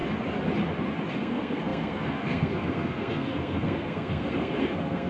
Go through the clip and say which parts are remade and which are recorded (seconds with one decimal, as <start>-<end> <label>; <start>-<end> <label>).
0.0-1.1 recorded; 1.1-5.1 remade